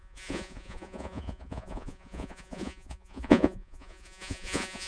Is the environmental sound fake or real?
fake